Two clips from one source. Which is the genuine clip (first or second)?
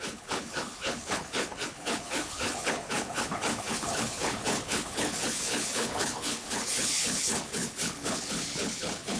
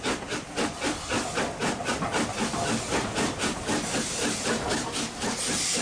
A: second